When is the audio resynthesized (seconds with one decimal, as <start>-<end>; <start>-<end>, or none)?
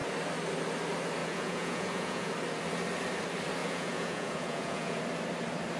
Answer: 1.2-2.3; 3.6-5.0